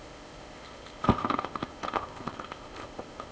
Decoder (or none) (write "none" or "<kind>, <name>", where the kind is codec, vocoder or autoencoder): codec, ZipCodec